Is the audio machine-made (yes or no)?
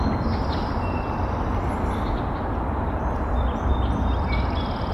no